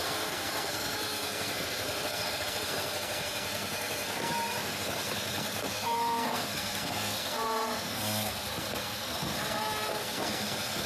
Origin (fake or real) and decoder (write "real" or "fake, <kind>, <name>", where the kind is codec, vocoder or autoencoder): fake, codec, SNAC